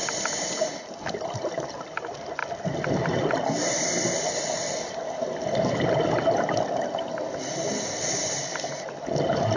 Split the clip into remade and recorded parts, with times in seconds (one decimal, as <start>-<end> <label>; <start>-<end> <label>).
0.0-9.6 recorded